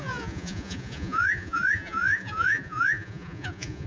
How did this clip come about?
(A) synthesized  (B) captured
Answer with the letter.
A